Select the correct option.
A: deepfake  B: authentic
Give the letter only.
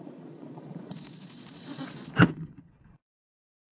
A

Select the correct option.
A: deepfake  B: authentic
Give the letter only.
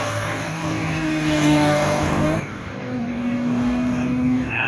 A